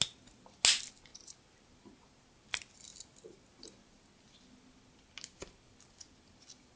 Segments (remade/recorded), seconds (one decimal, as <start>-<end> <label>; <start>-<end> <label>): 0.0-6.8 recorded